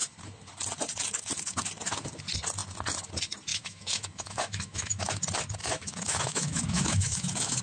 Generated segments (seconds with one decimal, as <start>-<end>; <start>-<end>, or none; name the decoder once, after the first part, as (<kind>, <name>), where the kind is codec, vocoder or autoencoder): 3.5-5.1 (autoencoder, DAC-VAE); 5.6-7.6